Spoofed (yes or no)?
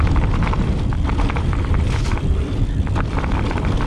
no